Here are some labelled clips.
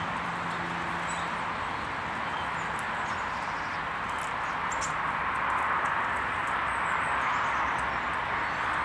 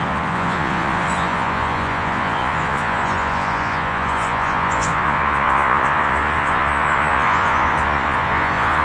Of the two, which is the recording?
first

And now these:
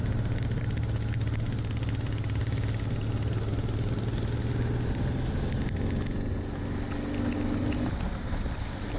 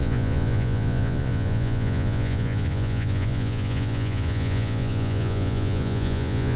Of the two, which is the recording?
first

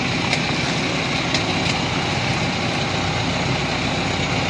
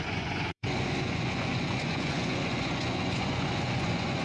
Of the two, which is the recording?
first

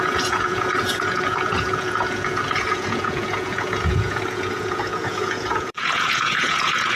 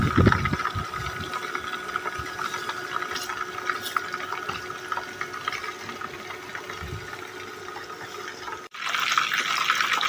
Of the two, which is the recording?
second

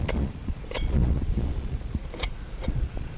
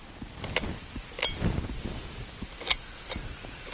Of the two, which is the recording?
second